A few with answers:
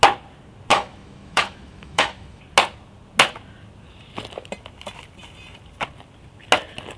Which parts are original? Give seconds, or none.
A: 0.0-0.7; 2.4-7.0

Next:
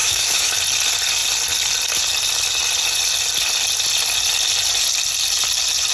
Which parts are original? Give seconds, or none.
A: 0.6-5.9

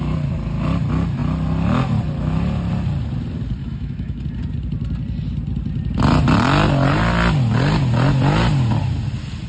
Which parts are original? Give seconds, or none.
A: 0.0-3.6; 4.2-9.5

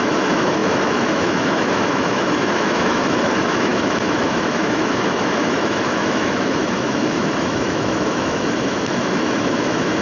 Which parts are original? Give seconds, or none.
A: none

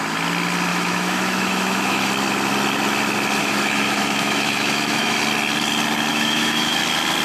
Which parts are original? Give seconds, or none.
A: 0.0-0.7; 2.1-3.4; 5.2-6.1; 6.8-7.2